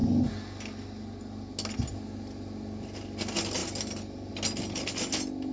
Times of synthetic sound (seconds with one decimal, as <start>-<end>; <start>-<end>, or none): none